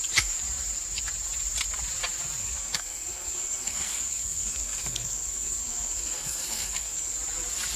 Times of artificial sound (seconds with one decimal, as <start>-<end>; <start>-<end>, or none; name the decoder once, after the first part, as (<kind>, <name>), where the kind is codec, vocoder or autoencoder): 2.4-7.1 (codec, SNAC)